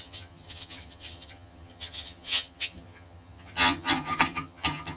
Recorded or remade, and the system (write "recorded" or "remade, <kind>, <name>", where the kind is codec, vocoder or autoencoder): remade, vocoder, HiFi-GAN